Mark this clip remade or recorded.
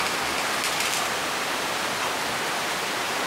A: recorded